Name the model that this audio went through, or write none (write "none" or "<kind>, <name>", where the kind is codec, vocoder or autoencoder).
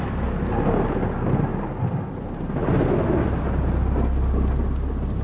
none